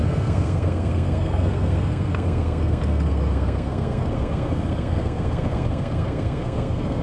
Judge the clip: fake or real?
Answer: fake